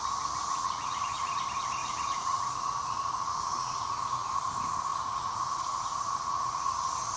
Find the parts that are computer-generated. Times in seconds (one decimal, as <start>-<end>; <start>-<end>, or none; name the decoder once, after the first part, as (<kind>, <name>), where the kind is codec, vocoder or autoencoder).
0.4-1.4 (vocoder, Vocos); 1.8-4.4; 4.9-7.2

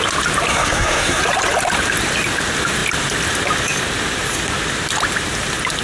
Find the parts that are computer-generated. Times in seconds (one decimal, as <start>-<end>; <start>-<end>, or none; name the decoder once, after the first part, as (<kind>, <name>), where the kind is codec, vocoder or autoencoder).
0.5-1.2 (codec, SNAC)

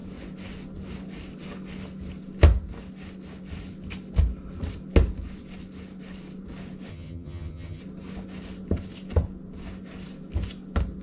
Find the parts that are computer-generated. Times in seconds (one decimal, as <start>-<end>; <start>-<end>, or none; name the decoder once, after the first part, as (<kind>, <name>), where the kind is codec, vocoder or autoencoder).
6.9-7.8 (vocoder, HiFi-GAN)

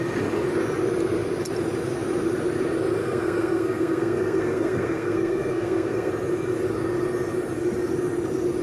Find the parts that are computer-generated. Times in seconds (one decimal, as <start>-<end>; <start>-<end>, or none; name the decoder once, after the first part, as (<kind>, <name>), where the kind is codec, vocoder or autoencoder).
3.0-6.1 (codec, SNAC)